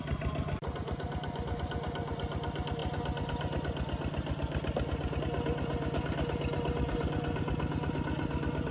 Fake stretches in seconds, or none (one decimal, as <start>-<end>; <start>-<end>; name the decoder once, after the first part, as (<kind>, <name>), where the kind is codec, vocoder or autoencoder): none

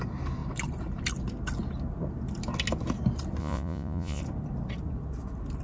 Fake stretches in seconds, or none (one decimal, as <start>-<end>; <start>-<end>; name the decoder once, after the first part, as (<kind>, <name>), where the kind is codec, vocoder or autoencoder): 3.4-4.2 (vocoder, Vocos)

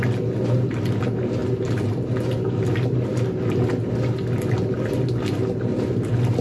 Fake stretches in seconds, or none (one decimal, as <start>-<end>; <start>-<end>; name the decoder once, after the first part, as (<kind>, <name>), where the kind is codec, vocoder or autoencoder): none

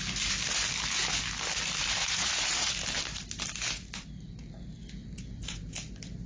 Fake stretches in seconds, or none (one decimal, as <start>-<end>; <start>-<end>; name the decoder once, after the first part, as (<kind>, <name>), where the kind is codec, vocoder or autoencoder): 2.0-2.7 (vocoder, Vocos)

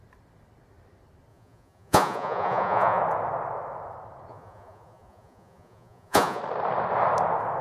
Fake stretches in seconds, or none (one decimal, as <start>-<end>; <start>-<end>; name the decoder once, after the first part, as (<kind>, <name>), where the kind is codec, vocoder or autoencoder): 1.3-3.0 (vocoder, Vocos); 4.3-6.4

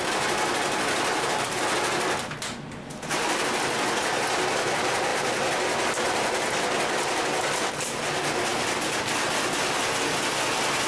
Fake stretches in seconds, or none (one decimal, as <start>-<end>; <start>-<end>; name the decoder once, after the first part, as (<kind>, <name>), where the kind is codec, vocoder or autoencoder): none

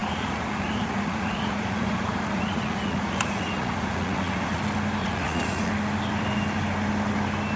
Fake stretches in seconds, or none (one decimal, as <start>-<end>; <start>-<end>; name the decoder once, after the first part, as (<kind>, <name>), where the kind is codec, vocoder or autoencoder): 0.0-4.6 (vocoder, Vocos); 5.0-5.7

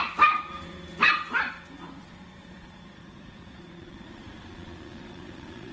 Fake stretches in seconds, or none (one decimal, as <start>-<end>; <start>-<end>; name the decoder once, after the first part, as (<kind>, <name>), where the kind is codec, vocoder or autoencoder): 2.0-5.7 (vocoder, Vocos)